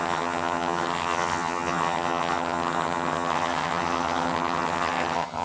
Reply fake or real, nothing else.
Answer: fake